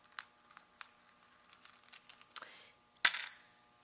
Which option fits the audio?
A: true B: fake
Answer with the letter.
A